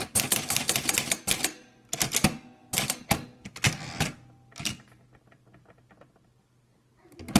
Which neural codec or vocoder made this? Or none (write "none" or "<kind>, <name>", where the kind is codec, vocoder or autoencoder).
none